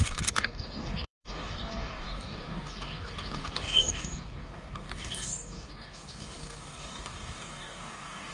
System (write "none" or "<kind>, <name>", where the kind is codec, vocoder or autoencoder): codec, DAC